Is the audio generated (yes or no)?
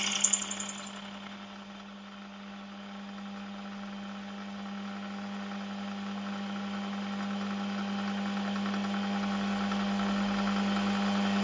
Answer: no